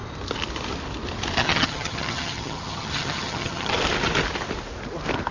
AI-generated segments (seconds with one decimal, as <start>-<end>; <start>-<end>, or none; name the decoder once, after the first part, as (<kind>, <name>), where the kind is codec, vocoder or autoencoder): 1.4-3.7 (vocoder, HiFi-GAN)